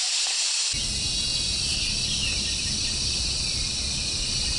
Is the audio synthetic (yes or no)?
no